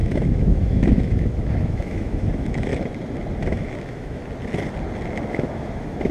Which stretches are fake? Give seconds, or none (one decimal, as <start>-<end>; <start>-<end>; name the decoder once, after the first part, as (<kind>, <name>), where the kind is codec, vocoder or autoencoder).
0.0-2.7 (autoencoder, DAC-VAE); 3.4-4.2; 5.3-6.1